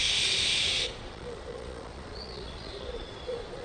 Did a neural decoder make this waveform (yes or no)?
yes